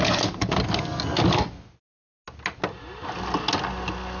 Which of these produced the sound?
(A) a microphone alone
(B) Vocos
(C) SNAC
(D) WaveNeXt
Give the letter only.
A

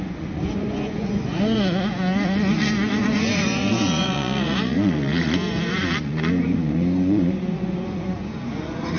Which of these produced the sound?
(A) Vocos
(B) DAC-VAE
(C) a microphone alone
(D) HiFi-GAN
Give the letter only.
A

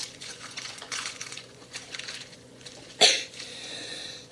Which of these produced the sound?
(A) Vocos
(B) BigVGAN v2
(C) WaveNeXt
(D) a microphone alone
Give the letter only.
A